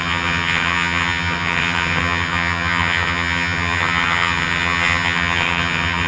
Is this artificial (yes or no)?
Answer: yes